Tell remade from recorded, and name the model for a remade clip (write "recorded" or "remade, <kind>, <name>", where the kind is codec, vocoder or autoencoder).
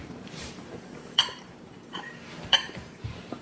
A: remade, vocoder, BigVGAN v2